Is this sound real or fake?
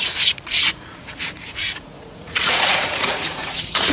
fake